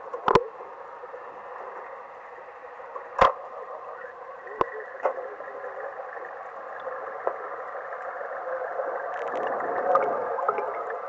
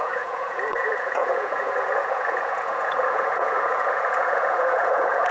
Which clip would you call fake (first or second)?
second